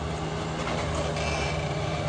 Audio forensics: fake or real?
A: real